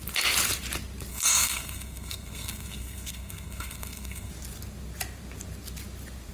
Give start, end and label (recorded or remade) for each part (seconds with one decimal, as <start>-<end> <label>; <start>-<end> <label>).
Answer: 0.0-1.1 recorded; 1.1-4.3 remade; 4.3-6.3 recorded